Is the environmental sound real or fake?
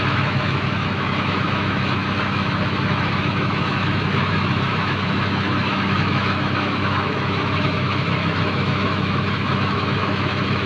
fake